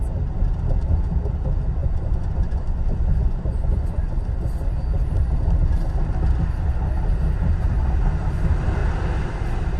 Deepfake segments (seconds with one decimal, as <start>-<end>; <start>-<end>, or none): 1.8-4.3